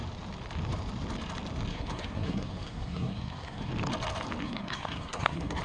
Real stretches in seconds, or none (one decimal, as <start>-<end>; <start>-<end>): 0.0-1.7; 3.7-4.4